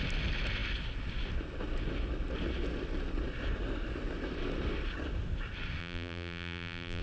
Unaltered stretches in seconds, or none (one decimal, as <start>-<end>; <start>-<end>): 0.0-5.8